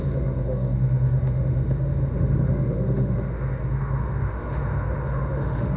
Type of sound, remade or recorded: remade